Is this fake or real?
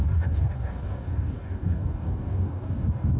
fake